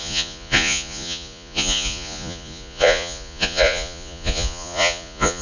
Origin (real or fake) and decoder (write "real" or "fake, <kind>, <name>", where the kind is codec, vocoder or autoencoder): fake, vocoder, Vocos